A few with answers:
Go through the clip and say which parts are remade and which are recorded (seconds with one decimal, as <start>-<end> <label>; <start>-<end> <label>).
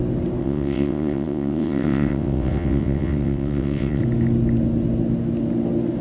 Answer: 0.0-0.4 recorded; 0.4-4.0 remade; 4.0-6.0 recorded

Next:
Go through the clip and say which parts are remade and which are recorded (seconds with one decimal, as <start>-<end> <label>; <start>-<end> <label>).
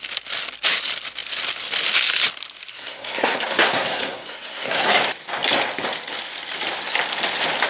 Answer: 0.0-2.7 recorded; 2.7-5.0 remade; 5.0-7.7 recorded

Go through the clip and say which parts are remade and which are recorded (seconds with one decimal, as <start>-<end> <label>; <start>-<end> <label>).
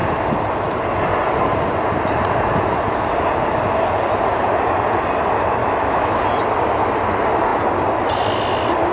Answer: 0.0-5.6 recorded; 5.6-6.2 remade; 6.2-8.9 recorded